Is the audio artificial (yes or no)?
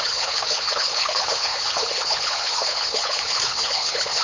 yes